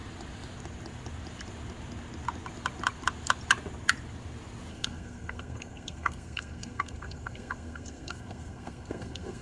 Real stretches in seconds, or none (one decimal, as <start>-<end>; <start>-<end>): 0.0-4.7